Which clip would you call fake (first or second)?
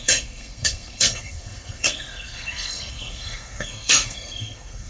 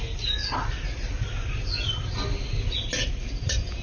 first